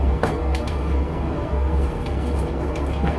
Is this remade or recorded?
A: remade